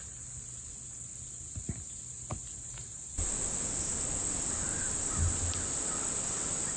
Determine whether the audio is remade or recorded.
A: recorded